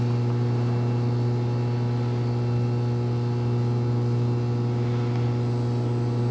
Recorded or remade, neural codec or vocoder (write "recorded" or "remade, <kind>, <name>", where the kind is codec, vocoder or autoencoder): recorded